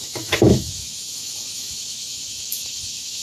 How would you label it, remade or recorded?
remade